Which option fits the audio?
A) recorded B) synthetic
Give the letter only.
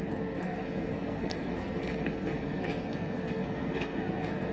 B